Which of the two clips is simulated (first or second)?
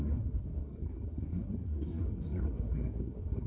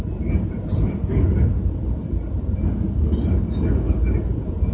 first